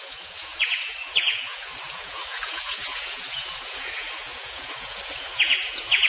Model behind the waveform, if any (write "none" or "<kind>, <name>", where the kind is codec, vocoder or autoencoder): vocoder, Vocos